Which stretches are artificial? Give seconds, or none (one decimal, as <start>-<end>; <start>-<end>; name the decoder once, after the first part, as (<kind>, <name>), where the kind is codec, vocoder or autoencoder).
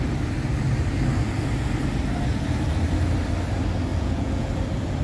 3.9-4.5 (vocoder, Vocos)